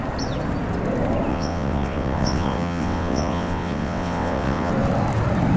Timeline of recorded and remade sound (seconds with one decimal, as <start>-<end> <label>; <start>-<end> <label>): 0.0-1.3 recorded; 1.3-4.7 remade; 4.7-5.6 recorded